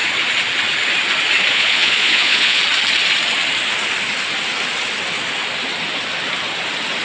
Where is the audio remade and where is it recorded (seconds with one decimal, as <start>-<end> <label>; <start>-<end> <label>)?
0.0-1.5 recorded; 1.5-2.6 remade; 2.6-7.0 recorded